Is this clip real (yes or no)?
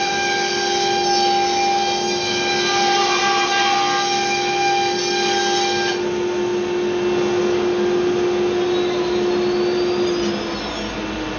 yes